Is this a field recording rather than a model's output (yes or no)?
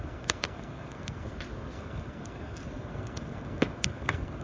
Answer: no